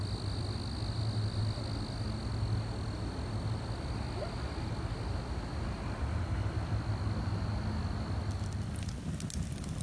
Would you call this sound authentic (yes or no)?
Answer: yes